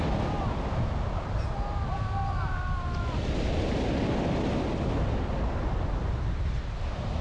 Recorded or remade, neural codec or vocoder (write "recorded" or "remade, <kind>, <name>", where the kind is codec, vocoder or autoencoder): recorded